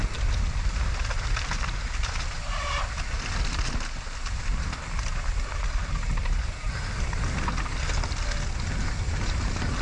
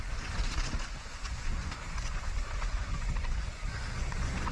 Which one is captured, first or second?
first